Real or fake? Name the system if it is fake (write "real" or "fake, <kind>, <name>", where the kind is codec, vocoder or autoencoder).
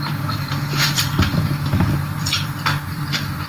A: fake, vocoder, BigVGAN v2